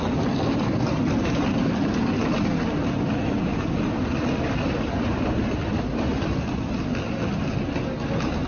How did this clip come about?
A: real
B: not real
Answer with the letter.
A